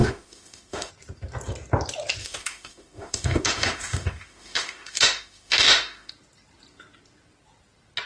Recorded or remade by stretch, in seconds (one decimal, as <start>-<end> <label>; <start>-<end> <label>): 0.0-0.9 remade; 0.9-2.2 recorded; 2.2-6.1 remade; 6.1-8.1 recorded